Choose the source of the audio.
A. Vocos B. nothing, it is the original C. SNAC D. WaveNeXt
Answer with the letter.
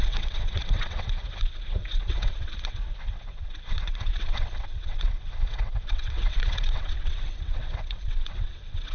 D